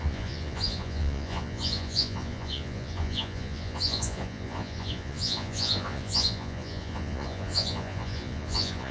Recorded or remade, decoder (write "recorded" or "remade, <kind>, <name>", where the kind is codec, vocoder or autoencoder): remade, vocoder, Vocos